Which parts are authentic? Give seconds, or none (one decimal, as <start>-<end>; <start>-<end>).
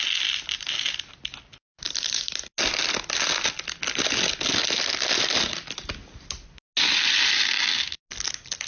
0.0-8.7